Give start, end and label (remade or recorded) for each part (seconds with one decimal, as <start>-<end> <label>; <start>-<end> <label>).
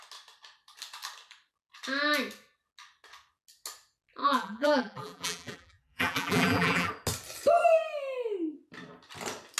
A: 0.0-4.2 recorded; 4.2-6.9 remade; 6.9-9.6 recorded